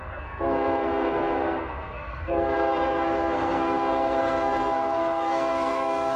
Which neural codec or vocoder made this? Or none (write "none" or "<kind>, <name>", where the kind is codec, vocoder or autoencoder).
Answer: codec, SNAC